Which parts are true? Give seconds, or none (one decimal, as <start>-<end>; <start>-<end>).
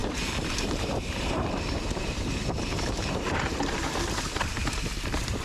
none